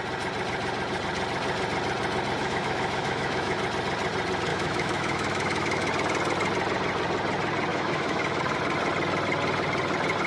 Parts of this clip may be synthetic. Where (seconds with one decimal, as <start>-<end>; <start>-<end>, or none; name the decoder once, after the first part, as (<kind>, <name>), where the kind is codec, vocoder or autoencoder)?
2.4-3.6 (autoencoder, DAC-VAE); 4.5-5.9; 7.7-8.4